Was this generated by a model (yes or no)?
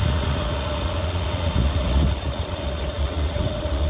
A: yes